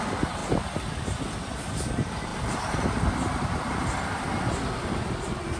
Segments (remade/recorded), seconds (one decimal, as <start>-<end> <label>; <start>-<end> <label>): 0.0-0.4 remade; 0.4-1.0 recorded; 1.0-5.6 remade